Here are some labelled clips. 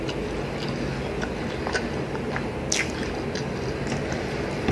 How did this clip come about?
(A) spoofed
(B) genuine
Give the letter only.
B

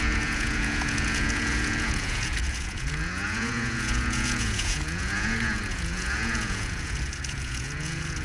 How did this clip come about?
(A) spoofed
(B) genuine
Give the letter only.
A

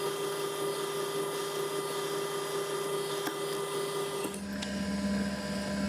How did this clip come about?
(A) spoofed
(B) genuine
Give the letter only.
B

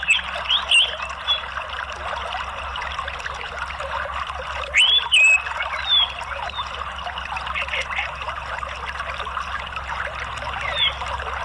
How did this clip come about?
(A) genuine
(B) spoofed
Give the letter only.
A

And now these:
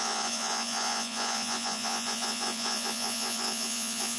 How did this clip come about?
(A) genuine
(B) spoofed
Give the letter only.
B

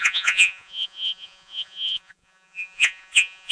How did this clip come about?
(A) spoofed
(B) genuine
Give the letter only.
A